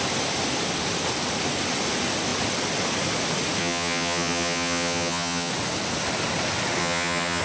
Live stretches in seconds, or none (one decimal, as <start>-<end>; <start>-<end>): 0.0-3.6; 5.5-6.8